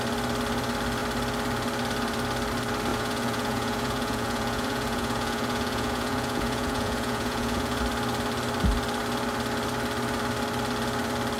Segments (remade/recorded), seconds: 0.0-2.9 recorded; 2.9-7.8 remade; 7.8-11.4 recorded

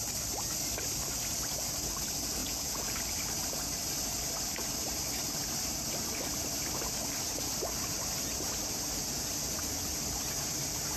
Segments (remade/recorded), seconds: 0.0-2.4 recorded; 2.4-3.0 remade; 3.0-11.0 recorded